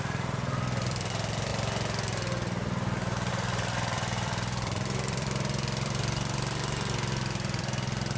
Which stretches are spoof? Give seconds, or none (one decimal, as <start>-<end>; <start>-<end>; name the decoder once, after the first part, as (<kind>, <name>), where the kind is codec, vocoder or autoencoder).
0.0-1.5 (vocoder, BigVGAN v2); 3.3-8.2